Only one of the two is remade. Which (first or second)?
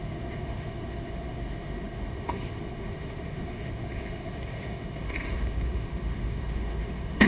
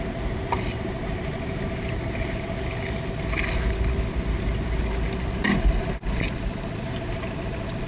first